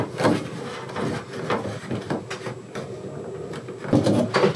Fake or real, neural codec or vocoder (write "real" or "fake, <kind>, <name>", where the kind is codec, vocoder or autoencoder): real